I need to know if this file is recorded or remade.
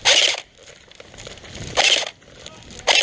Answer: recorded